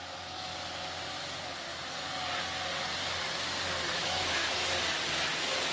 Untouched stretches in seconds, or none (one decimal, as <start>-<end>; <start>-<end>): 0.5-3.9; 4.4-5.7